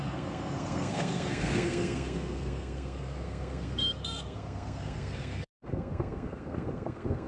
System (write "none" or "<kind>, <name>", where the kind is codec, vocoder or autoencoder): codec, SNAC